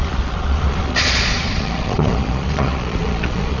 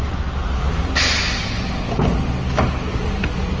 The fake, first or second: first